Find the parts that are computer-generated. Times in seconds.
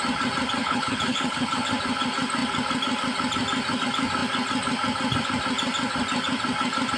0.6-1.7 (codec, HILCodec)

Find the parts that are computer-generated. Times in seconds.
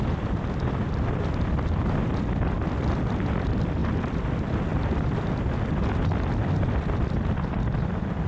0.0-3.8 (vocoder, BigVGAN v2); 4.3-4.7; 6.4-8.3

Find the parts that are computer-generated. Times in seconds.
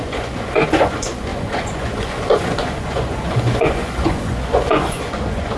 0.0-5.6 (vocoder, Vocos)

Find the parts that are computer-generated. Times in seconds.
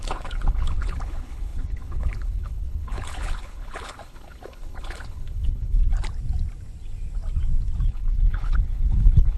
0.0-5.9 (codec, HILCodec); 7.9-9.4